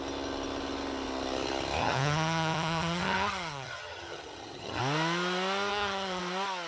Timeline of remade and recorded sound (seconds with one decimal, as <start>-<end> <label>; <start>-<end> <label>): 0.0-1.8 recorded; 1.8-4.8 remade; 4.8-5.7 recorded; 5.7-6.2 remade; 6.2-6.7 recorded